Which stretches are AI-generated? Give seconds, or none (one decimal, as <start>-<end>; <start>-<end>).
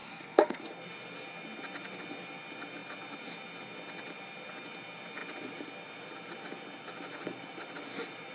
0.0-0.6